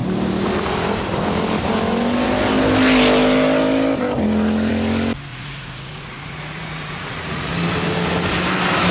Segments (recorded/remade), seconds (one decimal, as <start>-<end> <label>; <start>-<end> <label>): 0.0-5.3 recorded; 5.3-7.5 remade; 7.5-8.9 recorded